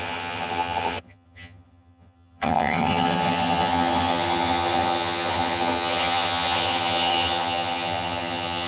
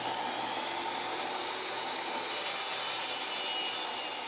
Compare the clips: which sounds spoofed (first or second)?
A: first